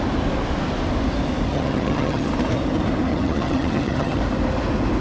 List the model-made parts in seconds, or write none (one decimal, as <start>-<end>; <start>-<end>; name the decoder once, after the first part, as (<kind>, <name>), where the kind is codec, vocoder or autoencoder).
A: 1.5-2.3 (vocoder, HiFi-GAN); 3.1-4.2